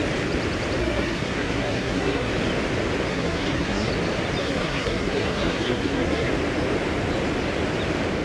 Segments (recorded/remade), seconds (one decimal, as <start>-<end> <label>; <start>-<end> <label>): 0.0-0.8 recorded; 0.8-2.3 remade; 2.3-3.1 recorded; 3.1-3.9 remade; 3.9-4.4 recorded; 4.4-6.3 remade; 6.3-8.2 recorded